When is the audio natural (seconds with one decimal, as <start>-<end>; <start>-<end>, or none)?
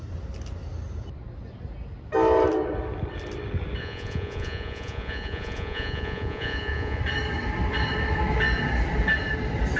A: 0.0-3.8; 7.0-9.8